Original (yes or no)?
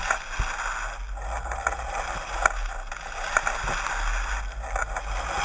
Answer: yes